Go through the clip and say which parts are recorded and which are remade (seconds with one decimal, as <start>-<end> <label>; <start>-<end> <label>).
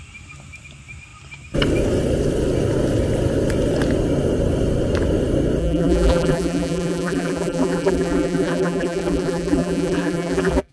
0.0-5.6 recorded; 5.6-10.7 remade